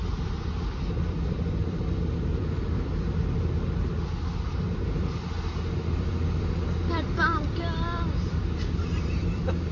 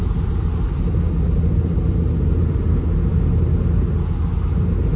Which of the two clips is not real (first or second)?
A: first